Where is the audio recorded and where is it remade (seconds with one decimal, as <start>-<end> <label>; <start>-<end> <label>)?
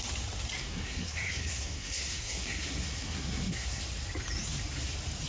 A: 0.0-0.6 recorded; 0.6-3.8 remade; 3.8-5.3 recorded